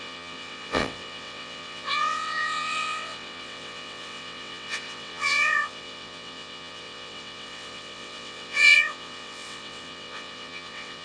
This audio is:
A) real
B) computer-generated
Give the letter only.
B